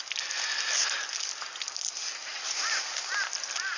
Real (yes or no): yes